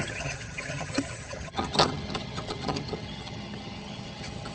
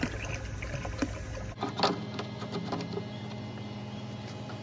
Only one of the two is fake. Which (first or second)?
first